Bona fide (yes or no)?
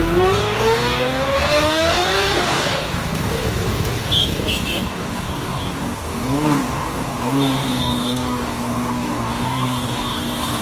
no